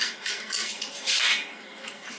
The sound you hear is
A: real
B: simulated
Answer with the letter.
B